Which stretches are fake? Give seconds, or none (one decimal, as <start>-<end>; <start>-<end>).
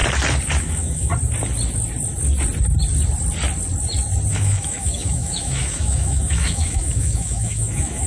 0.6-1.1; 4.3-8.1